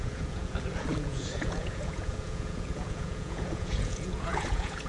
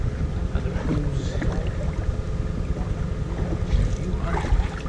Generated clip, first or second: first